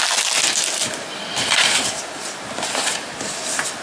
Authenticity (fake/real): real